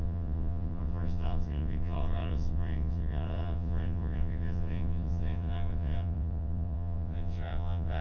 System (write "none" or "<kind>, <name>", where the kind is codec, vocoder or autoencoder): vocoder, WaveNeXt